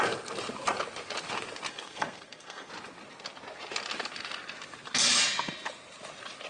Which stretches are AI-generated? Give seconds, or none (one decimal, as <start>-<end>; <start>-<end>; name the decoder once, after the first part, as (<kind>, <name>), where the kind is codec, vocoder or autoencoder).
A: 1.7-2.7 (codec, SNAC)